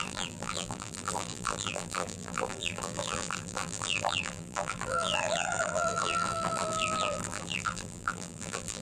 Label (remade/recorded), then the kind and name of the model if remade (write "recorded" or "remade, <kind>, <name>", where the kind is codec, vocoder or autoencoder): remade, vocoder, BigVGAN v2